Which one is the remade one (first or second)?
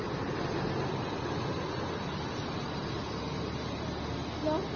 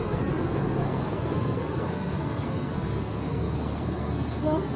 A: second